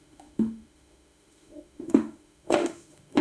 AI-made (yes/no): yes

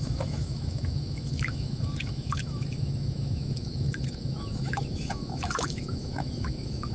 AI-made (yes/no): yes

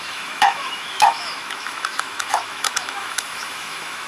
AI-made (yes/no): yes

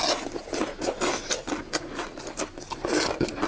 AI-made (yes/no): no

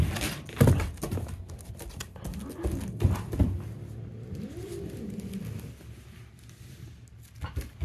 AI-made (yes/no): no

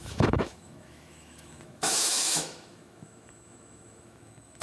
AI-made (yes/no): yes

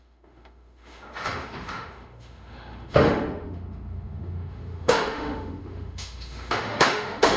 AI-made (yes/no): yes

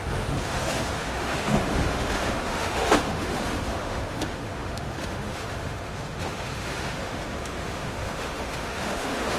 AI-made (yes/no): yes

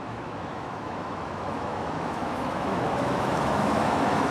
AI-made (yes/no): yes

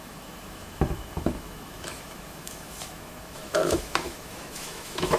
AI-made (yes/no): yes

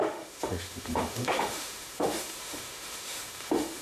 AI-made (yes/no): yes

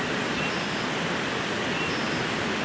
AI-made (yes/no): no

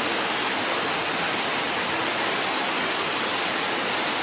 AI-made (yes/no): no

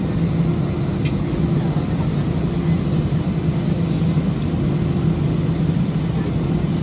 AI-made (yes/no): no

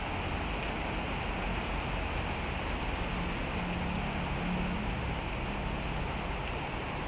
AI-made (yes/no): no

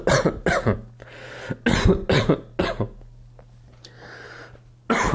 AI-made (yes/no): no